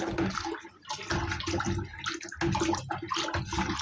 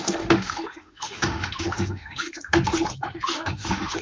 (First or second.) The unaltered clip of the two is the first